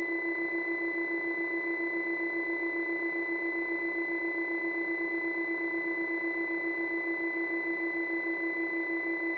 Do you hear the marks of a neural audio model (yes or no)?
no